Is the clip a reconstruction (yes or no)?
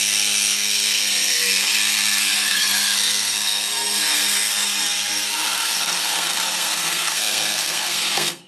yes